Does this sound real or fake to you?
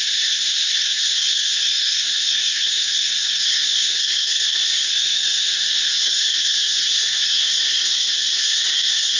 fake